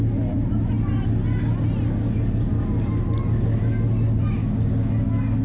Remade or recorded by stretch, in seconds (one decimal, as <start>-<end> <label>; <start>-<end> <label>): 0.0-4.4 recorded; 4.4-4.9 remade; 4.9-5.4 recorded

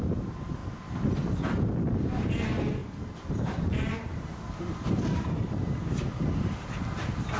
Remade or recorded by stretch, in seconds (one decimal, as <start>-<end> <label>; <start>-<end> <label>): 0.0-2.8 recorded; 2.8-7.4 remade

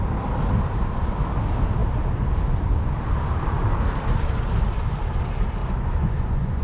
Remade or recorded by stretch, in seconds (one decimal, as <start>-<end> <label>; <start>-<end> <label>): 0.0-5.6 recorded; 5.6-6.6 remade

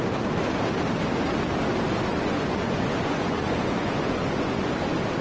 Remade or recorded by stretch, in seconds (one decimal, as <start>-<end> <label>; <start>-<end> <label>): 0.0-2.1 recorded; 2.1-4.7 remade; 4.7-5.2 recorded

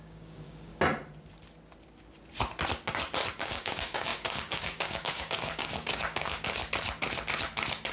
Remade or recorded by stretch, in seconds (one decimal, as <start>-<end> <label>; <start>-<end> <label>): 0.0-0.7 remade; 0.7-3.3 recorded; 3.3-6.6 remade; 6.6-7.9 recorded

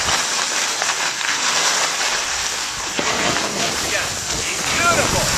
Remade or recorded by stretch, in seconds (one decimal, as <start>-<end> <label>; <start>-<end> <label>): 0.0-0.7 recorded; 0.7-1.7 remade; 1.7-2.3 recorded; 2.3-3.7 remade; 3.7-4.2 recorded; 4.2-4.8 remade; 4.8-5.4 recorded

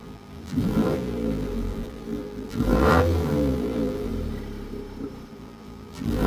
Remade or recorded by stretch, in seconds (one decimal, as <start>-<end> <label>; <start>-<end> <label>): 0.0-4.1 remade; 4.1-5.3 recorded; 5.3-6.3 remade